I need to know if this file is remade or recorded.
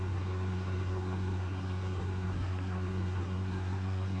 remade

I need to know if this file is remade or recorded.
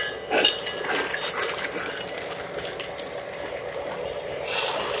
recorded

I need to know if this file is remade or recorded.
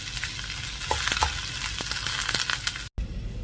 recorded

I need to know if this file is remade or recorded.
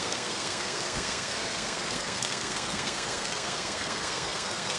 remade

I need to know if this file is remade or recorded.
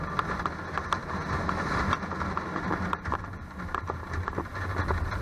recorded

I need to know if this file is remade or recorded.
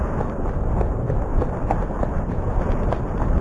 recorded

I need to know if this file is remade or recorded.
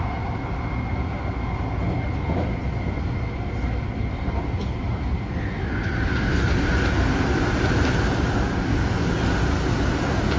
recorded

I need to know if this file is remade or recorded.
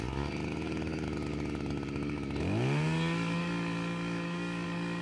remade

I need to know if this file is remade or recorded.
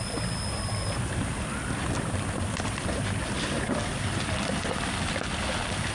remade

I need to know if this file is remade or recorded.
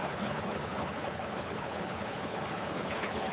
remade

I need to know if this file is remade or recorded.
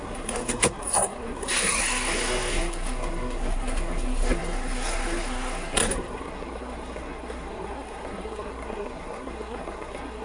remade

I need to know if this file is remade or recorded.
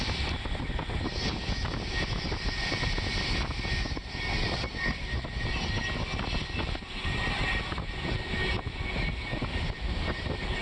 recorded